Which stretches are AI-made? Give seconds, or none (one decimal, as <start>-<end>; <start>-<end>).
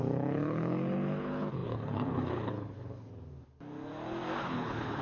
0.0-3.1; 4.4-5.0